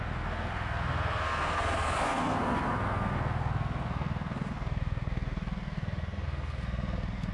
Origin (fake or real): fake